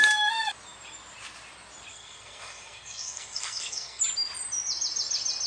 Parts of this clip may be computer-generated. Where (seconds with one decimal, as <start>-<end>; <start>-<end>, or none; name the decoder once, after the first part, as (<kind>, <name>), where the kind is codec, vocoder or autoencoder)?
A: 1.9-4.0 (codec, SNAC)